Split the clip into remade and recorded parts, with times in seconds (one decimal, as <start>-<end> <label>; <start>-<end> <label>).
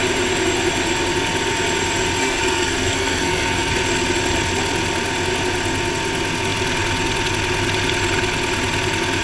0.0-2.2 recorded; 2.2-3.7 remade; 3.7-9.2 recorded